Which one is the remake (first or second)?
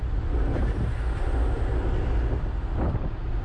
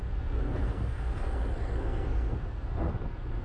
second